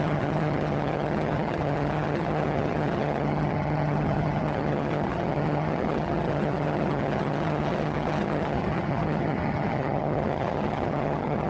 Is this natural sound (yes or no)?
no